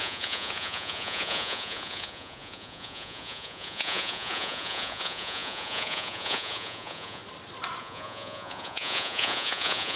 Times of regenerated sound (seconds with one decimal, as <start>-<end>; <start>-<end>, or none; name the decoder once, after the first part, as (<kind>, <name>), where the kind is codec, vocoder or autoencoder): 0.0-7.2 (vocoder, Vocos); 7.8-10.0